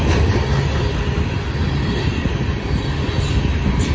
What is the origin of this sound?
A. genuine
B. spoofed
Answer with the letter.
A